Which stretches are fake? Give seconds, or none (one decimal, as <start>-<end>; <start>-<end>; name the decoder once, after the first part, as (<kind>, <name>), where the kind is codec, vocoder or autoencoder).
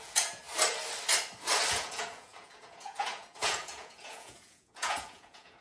0.0-0.4 (vocoder, Vocos); 1.7-5.6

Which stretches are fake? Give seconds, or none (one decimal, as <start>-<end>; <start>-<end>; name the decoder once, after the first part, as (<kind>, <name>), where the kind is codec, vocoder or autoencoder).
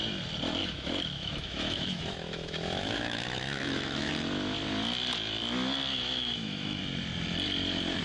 0.6-4.1 (autoencoder, DAC-VAE); 5.9-6.8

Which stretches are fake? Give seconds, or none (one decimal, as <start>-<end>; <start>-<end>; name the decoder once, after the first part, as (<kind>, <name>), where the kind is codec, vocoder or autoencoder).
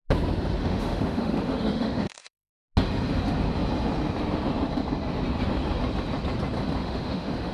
0.6-2.5 (autoencoder, DAC-VAE); 6.8-7.5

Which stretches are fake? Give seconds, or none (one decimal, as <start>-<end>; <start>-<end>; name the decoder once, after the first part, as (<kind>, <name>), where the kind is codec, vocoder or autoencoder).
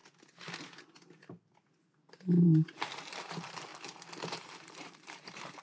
2.1-3.7 (vocoder, BigVGAN v2); 4.3-5.6